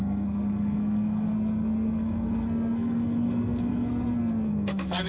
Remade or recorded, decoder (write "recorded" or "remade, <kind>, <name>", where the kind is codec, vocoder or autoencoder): remade, codec, SNAC